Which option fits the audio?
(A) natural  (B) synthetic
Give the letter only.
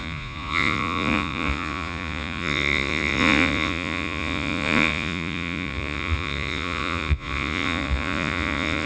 B